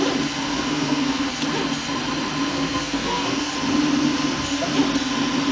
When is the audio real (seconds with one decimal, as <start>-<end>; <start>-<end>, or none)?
0.0-0.5; 1.3-2.5; 3.5-5.5